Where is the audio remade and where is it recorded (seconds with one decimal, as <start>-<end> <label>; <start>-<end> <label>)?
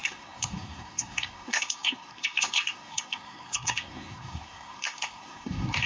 0.0-5.9 remade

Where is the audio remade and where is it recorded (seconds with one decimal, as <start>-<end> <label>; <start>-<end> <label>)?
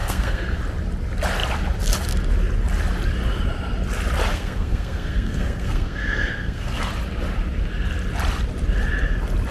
0.0-0.6 remade; 0.6-4.3 recorded; 4.3-6.9 remade; 6.9-9.5 recorded